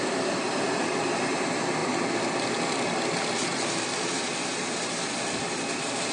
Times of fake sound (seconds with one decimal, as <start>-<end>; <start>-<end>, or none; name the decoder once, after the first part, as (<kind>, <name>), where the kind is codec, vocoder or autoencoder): 0.0-3.5 (vocoder, BigVGAN v2); 4.0-6.1